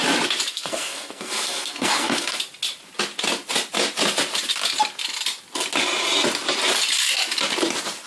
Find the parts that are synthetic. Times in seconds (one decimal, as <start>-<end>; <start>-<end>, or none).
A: 0.5-2.4